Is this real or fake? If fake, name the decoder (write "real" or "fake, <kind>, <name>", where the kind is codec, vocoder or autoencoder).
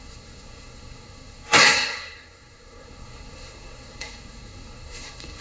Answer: fake, codec, SNAC